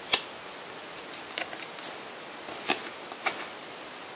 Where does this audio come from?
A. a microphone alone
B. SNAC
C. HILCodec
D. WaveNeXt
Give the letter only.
A